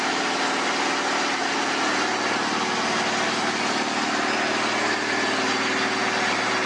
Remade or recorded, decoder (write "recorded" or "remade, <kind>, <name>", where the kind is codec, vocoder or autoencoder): recorded